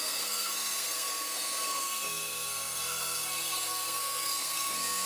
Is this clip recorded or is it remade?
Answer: remade